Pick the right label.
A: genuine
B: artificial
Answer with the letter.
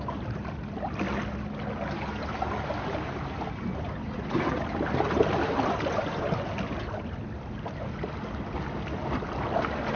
A